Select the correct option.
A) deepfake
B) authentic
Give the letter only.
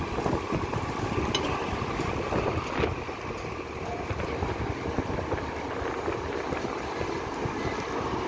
B